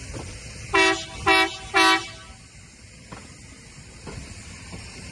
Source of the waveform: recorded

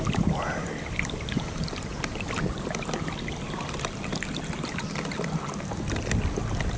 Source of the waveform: recorded